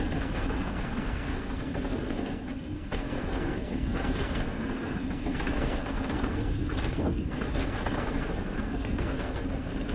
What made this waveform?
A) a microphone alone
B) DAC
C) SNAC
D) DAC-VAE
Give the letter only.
C